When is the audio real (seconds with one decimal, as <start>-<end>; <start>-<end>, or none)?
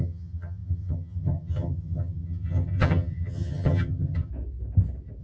4.3-5.2